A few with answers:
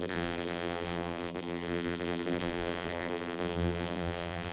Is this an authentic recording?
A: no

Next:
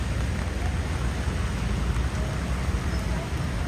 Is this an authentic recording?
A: yes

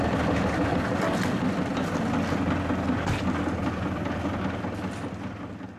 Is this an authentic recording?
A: yes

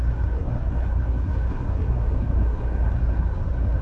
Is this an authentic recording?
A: no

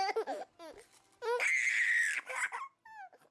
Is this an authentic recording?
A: yes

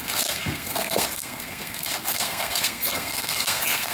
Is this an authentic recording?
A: no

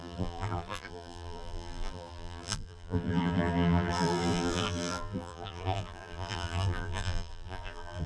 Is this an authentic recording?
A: no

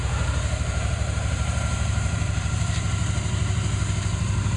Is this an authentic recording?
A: no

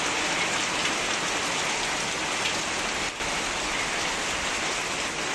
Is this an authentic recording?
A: yes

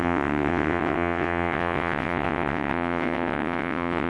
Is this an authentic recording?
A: no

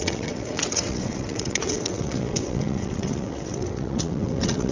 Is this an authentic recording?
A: no